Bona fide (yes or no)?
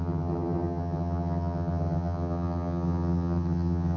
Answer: no